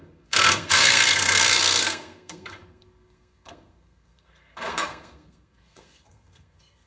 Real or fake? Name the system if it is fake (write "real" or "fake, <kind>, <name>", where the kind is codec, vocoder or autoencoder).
fake, codec, SNAC